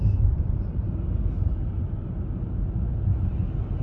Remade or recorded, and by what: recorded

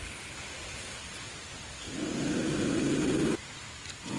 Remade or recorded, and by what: recorded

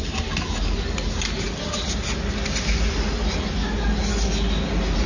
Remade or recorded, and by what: recorded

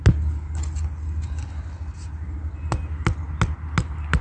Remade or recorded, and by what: recorded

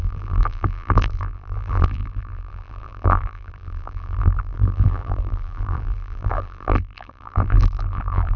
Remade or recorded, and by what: remade, vocoder, BigVGAN v2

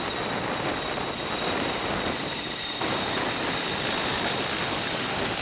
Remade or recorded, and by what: recorded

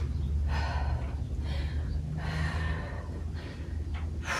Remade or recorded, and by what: recorded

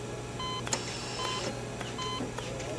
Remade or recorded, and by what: recorded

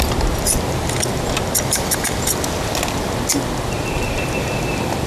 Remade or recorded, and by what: recorded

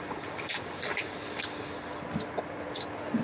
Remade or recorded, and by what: recorded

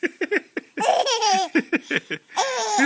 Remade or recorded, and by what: remade, vocoder, BigVGAN v2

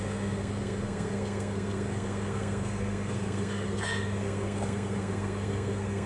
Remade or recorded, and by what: remade, codec, SNAC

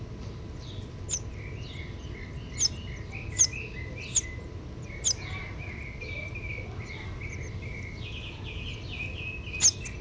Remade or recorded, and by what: recorded